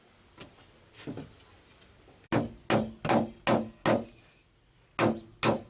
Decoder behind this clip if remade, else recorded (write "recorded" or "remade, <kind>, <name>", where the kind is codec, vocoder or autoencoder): recorded